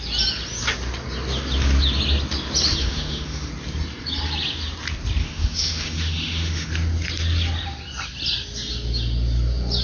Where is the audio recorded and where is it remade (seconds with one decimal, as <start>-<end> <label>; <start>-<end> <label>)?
0.0-2.8 recorded; 2.8-3.5 remade; 3.5-5.2 recorded; 5.2-6.7 remade; 6.7-9.8 recorded